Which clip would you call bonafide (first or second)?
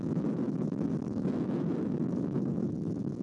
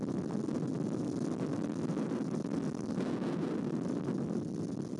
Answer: second